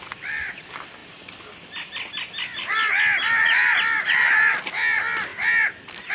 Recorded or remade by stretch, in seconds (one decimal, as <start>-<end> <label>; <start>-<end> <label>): 0.0-6.1 recorded